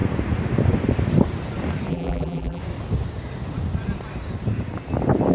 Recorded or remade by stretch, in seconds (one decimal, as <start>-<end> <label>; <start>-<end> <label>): 0.0-1.9 recorded; 1.9-2.6 remade; 2.6-5.3 recorded